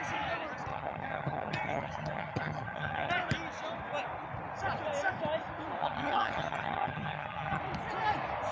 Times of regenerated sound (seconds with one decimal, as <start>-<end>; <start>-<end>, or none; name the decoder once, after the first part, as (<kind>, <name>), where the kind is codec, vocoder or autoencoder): 0.7-3.1 (vocoder, HiFi-GAN); 5.8-7.6